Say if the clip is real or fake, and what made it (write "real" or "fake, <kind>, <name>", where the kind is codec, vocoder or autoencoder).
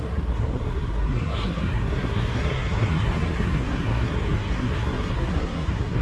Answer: fake, codec, SNAC